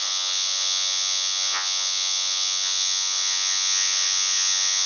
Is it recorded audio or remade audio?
remade